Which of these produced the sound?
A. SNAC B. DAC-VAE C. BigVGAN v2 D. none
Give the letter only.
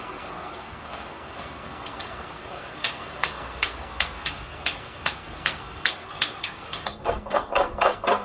A